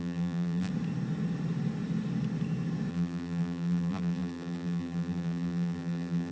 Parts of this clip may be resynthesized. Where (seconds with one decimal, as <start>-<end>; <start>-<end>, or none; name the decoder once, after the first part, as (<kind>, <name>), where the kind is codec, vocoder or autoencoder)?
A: 0.0-0.7 (vocoder, BigVGAN v2); 2.9-6.3